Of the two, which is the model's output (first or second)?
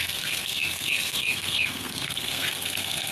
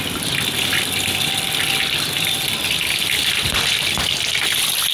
first